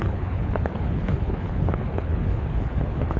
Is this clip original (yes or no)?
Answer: no